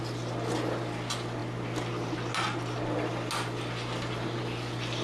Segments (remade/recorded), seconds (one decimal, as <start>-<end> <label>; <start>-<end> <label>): 0.0-5.0 recorded